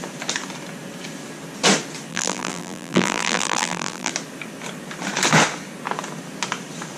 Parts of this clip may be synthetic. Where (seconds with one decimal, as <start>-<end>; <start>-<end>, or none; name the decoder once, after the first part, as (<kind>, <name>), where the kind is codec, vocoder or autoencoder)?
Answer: 2.1-4.1 (vocoder, BigVGAN v2)